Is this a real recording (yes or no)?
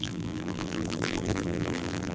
no